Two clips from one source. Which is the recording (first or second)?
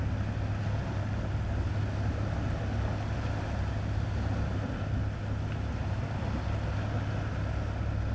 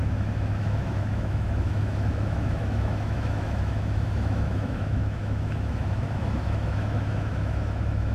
first